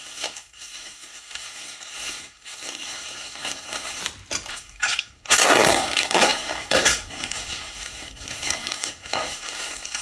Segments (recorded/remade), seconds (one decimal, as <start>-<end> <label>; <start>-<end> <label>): 0.0-4.0 remade; 4.0-4.5 recorded; 4.5-10.0 remade